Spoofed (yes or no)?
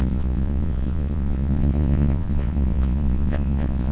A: yes